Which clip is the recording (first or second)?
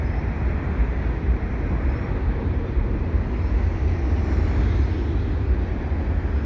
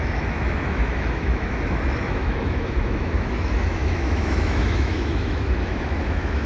first